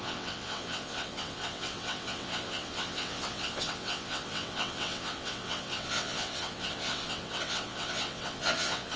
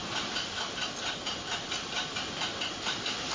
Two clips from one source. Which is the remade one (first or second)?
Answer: first